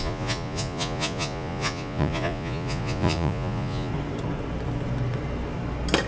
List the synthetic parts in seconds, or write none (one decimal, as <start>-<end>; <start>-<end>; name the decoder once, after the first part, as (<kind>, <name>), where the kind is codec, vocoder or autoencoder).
0.0-3.9 (vocoder, Vocos)